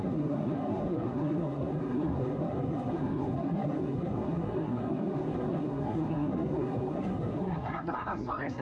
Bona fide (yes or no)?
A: no